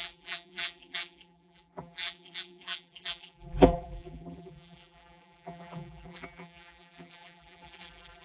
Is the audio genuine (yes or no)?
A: no